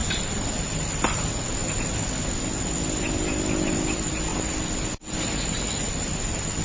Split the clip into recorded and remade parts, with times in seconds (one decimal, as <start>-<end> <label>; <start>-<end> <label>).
0.0-6.6 recorded